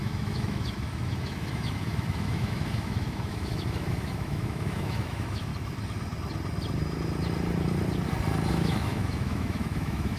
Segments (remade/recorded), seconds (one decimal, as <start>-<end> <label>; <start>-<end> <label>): 0.0-5.5 remade; 5.5-8.5 recorded; 8.5-10.2 remade